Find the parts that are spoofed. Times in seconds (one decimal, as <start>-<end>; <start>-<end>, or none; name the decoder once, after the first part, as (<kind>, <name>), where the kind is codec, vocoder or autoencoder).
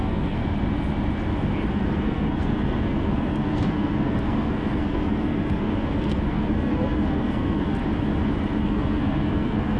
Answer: 0.0-0.4 (codec, SNAC); 1.7-7.8; 8.6-9.8